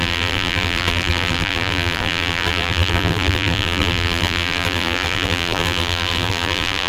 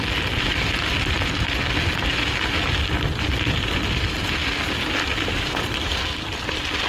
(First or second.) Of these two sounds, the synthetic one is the first